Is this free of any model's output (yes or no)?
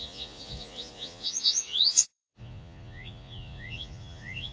no